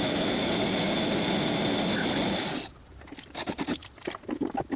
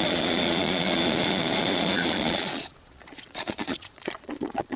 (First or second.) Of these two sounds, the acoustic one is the first